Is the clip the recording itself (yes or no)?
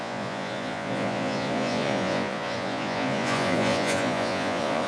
no